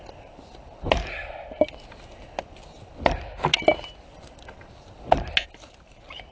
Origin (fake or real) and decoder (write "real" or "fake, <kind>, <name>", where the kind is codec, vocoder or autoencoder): real